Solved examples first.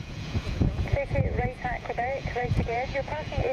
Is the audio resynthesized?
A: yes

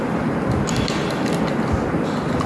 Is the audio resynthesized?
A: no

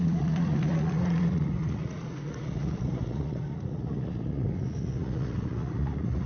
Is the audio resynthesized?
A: yes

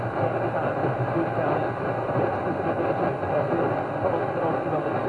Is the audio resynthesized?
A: no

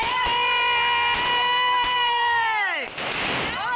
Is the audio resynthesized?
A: yes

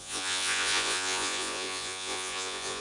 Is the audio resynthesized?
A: yes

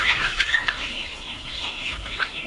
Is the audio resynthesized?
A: yes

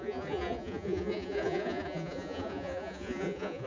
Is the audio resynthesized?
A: yes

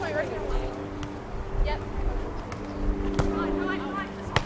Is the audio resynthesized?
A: no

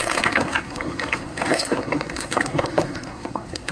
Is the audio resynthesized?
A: yes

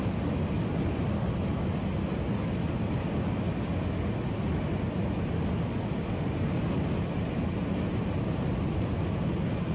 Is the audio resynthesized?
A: no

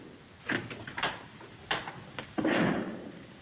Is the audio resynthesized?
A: no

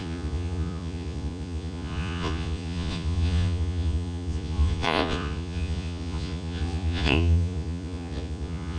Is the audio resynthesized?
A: yes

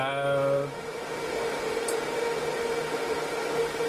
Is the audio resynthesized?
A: no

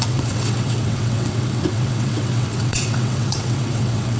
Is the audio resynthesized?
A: yes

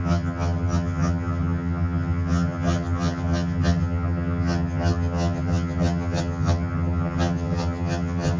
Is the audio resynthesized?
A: yes